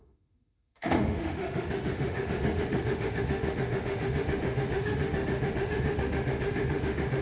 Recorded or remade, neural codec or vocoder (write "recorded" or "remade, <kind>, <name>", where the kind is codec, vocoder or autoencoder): remade, autoencoder, DAC-VAE